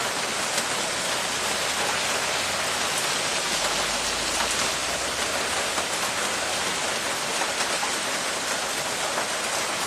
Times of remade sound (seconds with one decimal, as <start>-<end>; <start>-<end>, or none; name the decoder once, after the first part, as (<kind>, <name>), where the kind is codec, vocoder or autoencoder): none